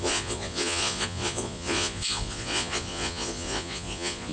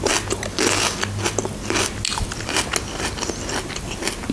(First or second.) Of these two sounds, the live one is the second